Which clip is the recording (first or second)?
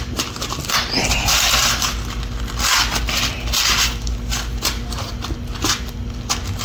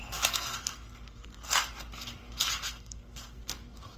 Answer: first